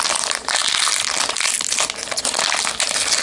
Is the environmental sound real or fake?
real